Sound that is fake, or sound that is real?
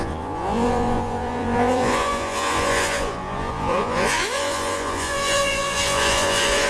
fake